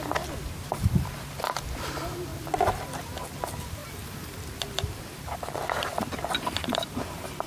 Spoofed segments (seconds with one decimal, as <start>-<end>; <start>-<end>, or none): 0.7-1.4; 2.3-3.0; 3.8-7.5